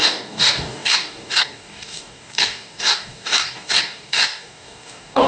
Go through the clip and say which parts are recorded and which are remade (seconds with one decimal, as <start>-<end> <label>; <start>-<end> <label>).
0.0-5.3 remade